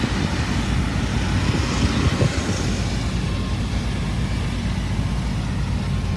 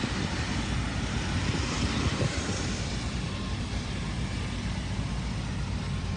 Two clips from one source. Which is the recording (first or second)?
first